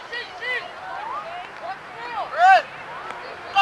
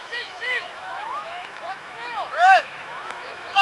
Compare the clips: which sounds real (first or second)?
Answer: first